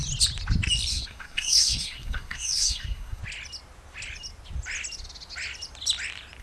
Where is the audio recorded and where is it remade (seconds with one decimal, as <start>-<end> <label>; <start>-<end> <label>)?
0.0-0.9 recorded; 0.9-3.2 remade; 3.2-6.4 recorded